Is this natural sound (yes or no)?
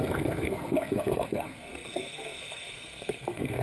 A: no